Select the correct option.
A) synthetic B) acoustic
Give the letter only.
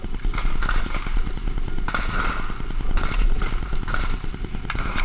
B